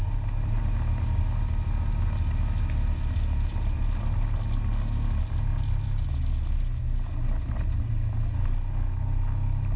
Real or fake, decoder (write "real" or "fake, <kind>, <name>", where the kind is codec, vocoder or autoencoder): real